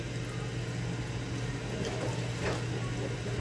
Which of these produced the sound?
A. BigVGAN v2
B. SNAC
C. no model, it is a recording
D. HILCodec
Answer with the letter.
C